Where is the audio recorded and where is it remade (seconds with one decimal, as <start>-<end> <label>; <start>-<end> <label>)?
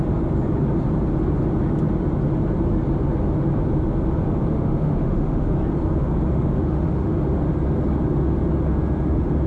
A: 0.0-4.5 recorded; 4.5-5.5 remade; 5.5-6.3 recorded; 6.3-7.1 remade; 7.1-9.5 recorded